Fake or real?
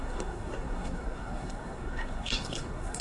fake